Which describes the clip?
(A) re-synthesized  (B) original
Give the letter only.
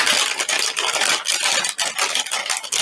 B